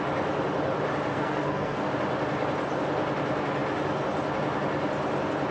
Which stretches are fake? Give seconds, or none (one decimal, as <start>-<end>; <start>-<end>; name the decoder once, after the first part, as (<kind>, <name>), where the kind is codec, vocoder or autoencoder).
1.1-1.8 (codec, SNAC)